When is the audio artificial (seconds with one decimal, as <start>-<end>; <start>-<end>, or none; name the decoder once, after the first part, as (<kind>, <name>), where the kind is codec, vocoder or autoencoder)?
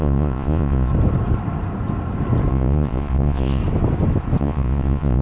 0.0-0.9 (vocoder, Vocos); 2.5-3.6; 4.4-5.2